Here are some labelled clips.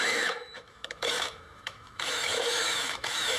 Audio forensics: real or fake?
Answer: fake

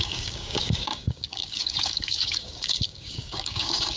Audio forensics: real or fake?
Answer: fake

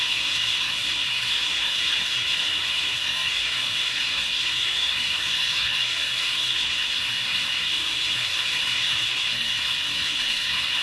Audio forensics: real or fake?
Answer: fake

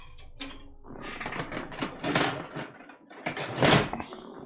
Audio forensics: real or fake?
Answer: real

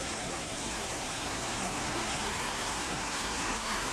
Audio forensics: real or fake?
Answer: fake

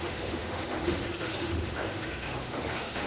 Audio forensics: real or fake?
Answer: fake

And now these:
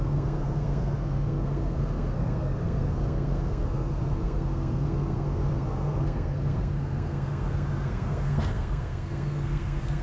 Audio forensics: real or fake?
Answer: fake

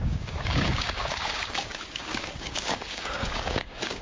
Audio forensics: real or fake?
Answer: fake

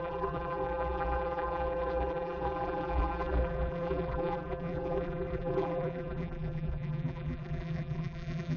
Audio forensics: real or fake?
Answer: fake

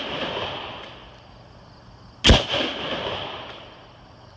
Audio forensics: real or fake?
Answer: real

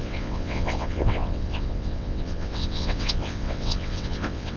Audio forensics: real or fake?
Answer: fake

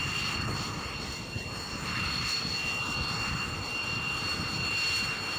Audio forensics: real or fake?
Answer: real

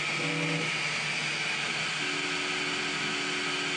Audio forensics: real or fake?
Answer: real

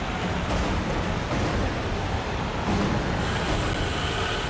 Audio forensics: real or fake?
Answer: real